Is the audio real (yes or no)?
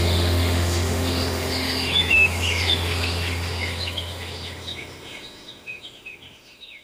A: no